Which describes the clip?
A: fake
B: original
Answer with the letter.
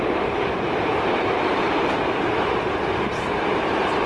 A